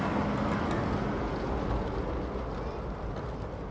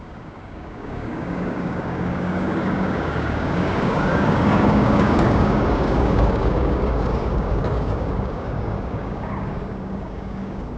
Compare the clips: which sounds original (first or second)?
first